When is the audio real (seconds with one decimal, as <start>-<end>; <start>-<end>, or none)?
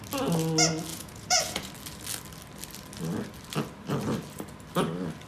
0.0-0.9; 1.7-5.3